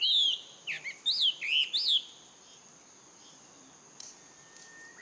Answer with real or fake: real